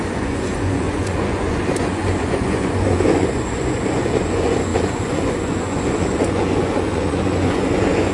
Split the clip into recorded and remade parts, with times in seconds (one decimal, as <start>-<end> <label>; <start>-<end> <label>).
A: 0.0-8.1 remade